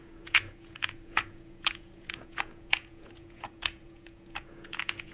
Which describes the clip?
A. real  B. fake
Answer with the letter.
B